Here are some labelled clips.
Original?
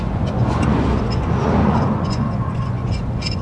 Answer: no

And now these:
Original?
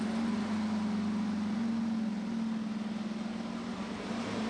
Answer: yes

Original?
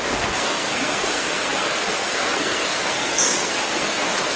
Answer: no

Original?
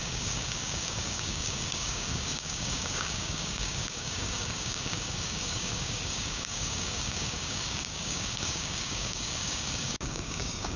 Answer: no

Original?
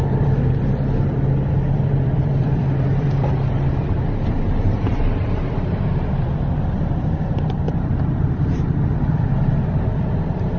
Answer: no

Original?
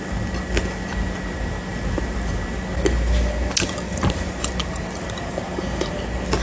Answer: yes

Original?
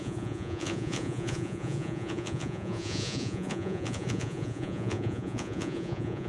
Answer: no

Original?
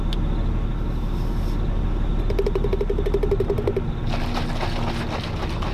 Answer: yes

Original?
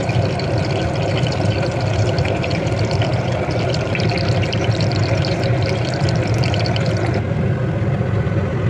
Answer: yes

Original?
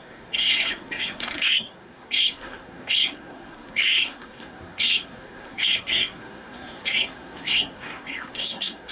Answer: no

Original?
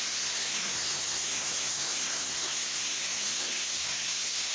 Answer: no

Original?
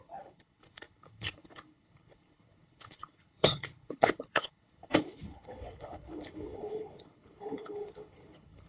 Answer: no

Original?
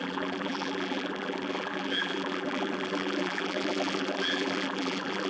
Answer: no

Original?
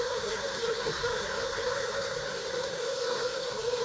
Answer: no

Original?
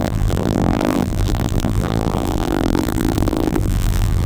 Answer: no